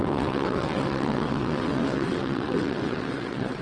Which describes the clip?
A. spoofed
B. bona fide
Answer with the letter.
A